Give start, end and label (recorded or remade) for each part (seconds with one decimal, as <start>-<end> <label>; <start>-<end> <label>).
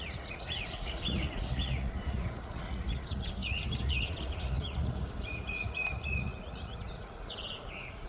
0.0-8.1 remade